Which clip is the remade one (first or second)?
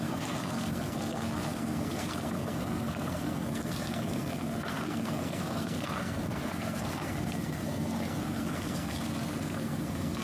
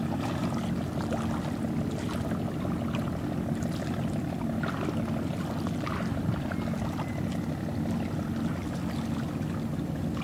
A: first